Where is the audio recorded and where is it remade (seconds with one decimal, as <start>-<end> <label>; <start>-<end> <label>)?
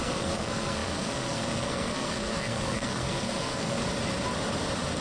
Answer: 0.0-3.8 remade; 3.8-5.0 recorded